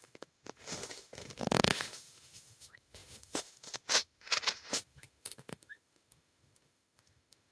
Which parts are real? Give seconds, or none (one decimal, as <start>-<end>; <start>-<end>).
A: none

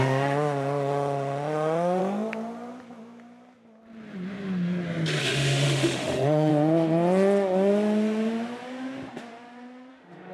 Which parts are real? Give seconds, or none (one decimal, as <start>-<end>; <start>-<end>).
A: 2.0-5.2; 6.5-9.9

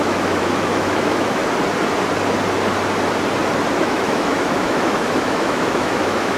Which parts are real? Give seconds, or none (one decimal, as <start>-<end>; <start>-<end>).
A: 1.4-3.8

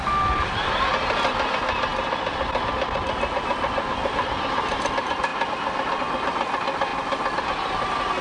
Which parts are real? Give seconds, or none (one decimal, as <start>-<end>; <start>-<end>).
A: 0.0-8.2

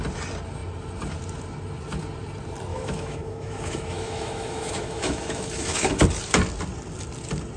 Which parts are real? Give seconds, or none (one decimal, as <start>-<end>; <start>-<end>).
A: 0.0-2.7; 6.0-7.6

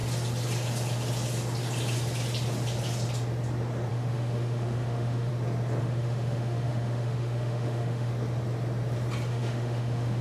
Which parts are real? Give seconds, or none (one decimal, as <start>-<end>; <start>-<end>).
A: 0.0-3.9; 5.3-5.8; 8.1-9.3

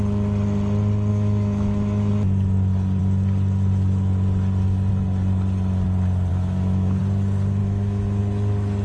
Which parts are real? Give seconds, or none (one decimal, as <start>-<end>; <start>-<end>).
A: 0.0-1.1; 2.1-6.3; 7.0-7.6; 8.2-8.8

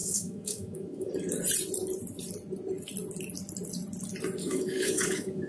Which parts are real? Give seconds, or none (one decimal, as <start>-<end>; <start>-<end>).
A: 1.1-4.4